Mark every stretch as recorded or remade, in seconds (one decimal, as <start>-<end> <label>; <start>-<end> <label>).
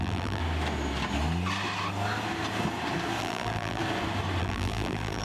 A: 0.0-0.4 remade; 0.4-3.2 recorded; 3.2-3.8 remade; 3.8-4.4 recorded; 4.4-5.2 remade